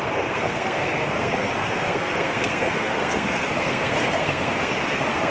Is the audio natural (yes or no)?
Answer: no